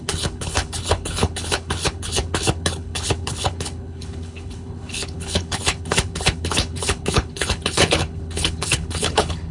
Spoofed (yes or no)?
yes